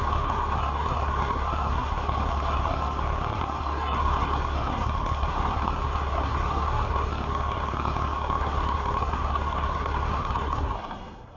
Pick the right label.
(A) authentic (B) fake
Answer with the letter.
B